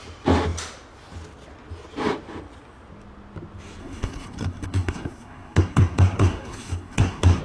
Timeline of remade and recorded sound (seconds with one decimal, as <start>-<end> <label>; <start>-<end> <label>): 0.0-3.8 recorded; 3.8-7.4 remade